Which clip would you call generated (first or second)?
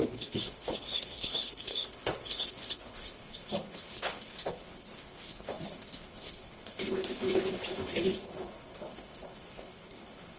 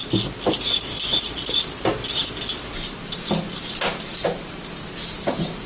first